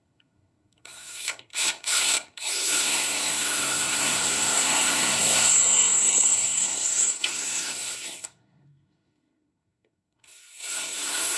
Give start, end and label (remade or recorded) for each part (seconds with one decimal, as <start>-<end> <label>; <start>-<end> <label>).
0.0-11.4 remade